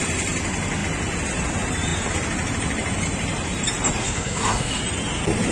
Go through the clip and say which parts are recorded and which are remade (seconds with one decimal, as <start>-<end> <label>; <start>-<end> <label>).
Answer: 0.0-4.0 recorded; 4.0-4.8 remade; 4.8-5.5 recorded